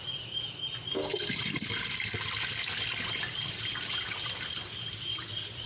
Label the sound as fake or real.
real